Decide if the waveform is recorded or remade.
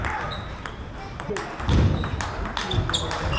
recorded